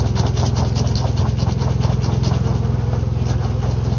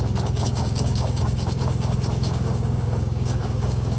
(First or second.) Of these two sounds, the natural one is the first